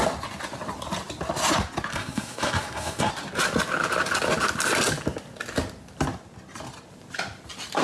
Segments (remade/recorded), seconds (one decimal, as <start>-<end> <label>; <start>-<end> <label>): 0.0-1.9 recorded; 1.9-3.1 remade; 3.1-7.8 recorded